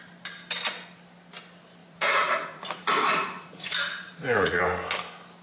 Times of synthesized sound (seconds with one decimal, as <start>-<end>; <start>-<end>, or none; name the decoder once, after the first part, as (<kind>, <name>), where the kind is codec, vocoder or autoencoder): 1.8-4.6 (vocoder, Vocos)